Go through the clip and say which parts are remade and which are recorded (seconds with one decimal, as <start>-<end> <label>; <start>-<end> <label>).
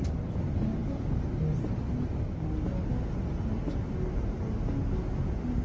0.0-5.6 recorded